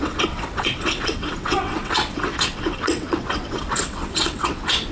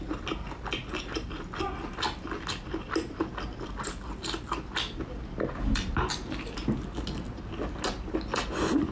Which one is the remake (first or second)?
first